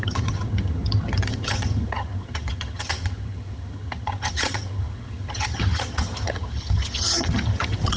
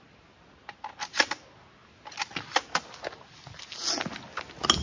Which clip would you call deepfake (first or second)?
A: first